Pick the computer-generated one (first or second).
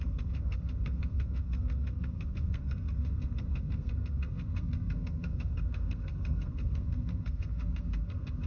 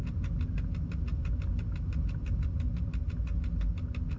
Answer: first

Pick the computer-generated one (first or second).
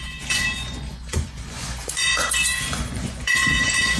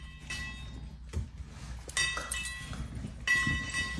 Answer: first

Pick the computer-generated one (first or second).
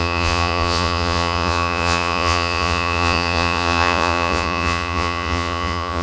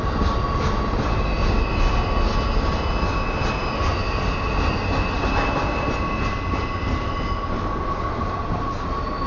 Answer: first